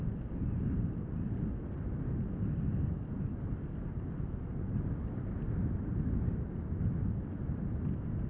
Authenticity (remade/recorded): recorded